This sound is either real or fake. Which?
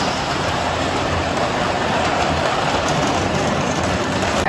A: fake